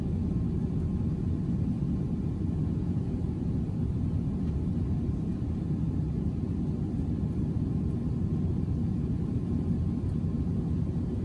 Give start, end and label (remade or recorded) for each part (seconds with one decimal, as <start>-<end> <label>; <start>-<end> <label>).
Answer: 0.0-5.3 recorded; 5.3-5.9 remade; 5.9-11.2 recorded